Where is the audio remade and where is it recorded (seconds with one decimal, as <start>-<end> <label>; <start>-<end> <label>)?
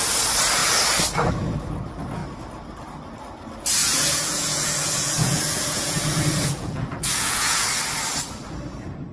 0.0-3.8 recorded; 3.8-7.7 remade; 7.7-9.1 recorded